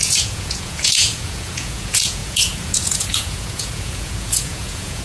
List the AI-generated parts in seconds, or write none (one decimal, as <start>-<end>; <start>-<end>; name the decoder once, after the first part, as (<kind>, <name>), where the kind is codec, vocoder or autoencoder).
0.0-5.0 (vocoder, Vocos)